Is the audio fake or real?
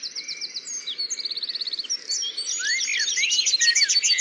real